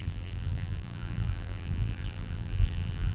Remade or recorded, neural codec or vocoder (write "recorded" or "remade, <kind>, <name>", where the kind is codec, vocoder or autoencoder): remade, vocoder, BigVGAN v2